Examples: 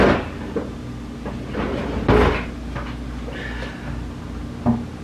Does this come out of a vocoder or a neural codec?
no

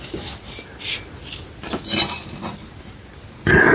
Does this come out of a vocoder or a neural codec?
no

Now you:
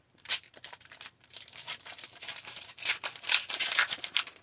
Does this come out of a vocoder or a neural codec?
yes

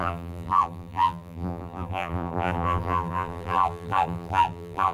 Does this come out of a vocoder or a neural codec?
yes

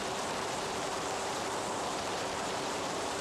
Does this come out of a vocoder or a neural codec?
yes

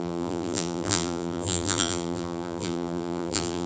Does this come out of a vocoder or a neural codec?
yes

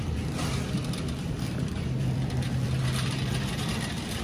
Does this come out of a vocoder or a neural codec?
yes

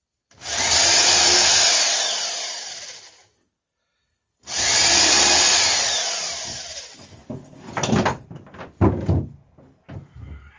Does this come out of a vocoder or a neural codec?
no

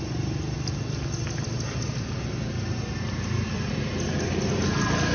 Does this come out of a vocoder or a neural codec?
no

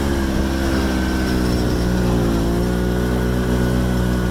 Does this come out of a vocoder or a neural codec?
no